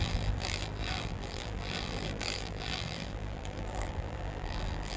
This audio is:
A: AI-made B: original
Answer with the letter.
A